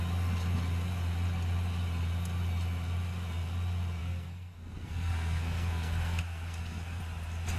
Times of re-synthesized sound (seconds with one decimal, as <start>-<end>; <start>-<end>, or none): 4.0-7.0